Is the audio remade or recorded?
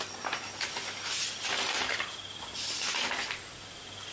recorded